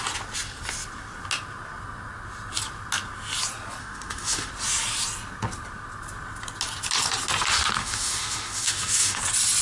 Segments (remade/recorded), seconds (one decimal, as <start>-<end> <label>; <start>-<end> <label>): 0.0-3.8 recorded; 3.8-4.5 remade; 4.5-7.8 recorded; 7.8-9.2 remade; 9.2-9.6 recorded